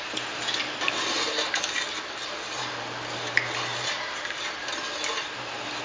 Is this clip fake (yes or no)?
no